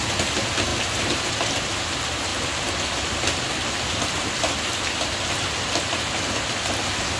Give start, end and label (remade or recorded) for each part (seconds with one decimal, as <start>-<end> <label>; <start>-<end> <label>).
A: 0.0-2.3 recorded; 2.3-4.0 remade; 4.0-7.2 recorded